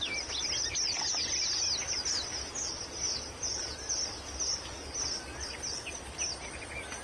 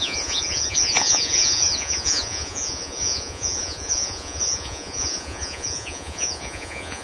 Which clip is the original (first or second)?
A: first